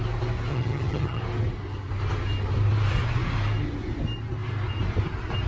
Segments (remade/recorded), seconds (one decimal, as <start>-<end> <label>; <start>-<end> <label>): 0.0-0.5 recorded; 0.5-1.2 remade; 1.2-5.5 recorded